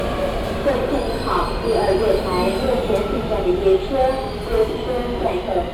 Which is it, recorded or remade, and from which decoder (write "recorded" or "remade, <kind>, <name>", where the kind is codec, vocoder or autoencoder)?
recorded